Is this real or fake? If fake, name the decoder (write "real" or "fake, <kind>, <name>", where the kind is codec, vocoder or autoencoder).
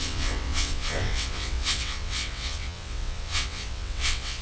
fake, vocoder, WaveNeXt